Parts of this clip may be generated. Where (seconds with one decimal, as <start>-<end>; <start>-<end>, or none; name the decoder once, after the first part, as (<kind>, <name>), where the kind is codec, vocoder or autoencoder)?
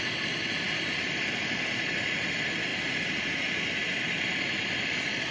3.8-5.3 (vocoder, BigVGAN v2)